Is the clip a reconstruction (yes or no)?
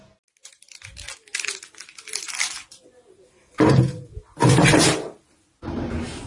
no